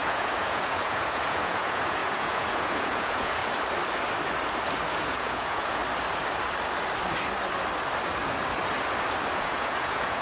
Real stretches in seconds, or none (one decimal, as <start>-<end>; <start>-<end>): 3.4-4.9; 5.8-9.4